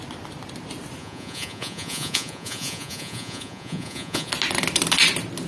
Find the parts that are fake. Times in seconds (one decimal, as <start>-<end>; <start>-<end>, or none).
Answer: 1.0-4.3